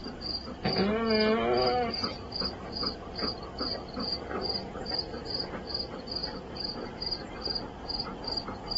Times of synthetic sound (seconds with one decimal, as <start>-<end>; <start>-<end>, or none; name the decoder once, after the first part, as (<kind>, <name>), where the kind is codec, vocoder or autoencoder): none